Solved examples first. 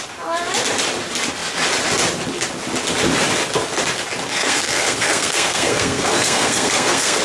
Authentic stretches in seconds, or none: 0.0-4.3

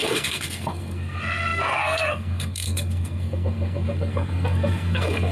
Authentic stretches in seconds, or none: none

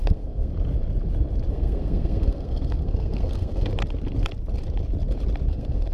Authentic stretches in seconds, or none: 0.5-1.5; 3.7-5.5

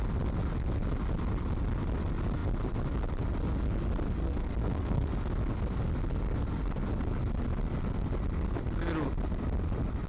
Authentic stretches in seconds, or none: 0.0-4.2; 5.1-10.1